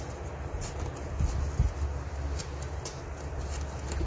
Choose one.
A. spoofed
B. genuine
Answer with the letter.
B